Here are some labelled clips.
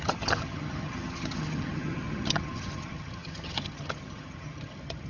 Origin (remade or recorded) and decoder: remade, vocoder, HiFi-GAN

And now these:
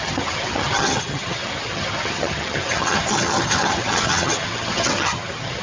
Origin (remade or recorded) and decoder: remade, vocoder, HiFi-GAN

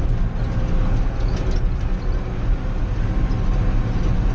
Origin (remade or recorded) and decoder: recorded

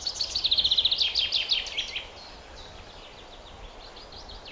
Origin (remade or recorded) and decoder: recorded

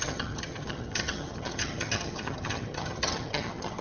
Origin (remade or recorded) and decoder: remade, vocoder, HiFi-GAN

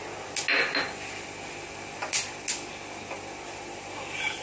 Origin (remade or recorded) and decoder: recorded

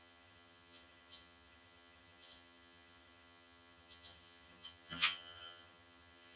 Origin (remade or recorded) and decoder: remade, vocoder, HiFi-GAN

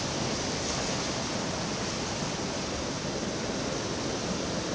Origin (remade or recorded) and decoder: recorded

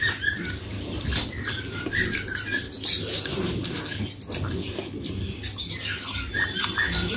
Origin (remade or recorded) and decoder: recorded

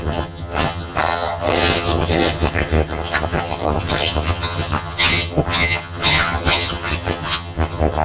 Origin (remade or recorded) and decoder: remade, vocoder, HiFi-GAN